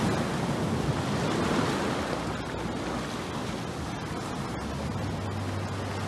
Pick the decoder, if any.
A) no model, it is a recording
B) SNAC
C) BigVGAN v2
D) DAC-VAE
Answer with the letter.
A